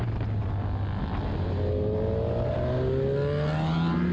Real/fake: real